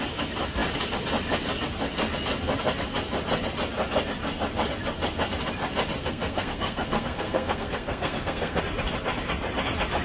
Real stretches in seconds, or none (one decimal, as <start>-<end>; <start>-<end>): 0.0-6.0; 8.6-10.0

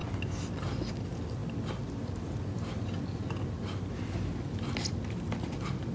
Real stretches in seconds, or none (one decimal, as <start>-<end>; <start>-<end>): 0.0-5.9

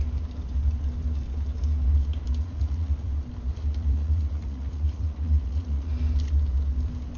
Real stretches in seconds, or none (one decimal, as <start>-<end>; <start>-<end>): 0.0-2.4; 3.1-3.7; 5.9-7.2

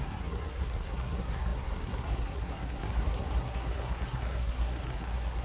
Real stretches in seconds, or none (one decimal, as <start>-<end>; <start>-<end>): none